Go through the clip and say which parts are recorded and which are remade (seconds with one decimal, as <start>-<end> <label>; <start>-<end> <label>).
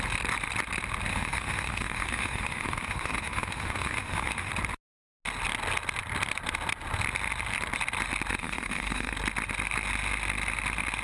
0.0-1.1 recorded; 1.1-4.5 remade; 4.5-8.4 recorded; 8.4-9.1 remade; 9.1-11.0 recorded